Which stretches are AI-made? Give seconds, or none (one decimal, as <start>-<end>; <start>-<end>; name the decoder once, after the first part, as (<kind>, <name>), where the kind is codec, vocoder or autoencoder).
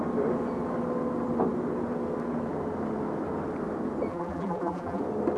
4.1-5.0 (vocoder, BigVGAN v2)